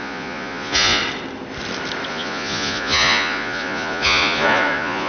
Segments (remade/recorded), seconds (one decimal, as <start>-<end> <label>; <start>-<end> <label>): 0.0-1.0 remade; 1.0-2.1 recorded; 2.1-5.1 remade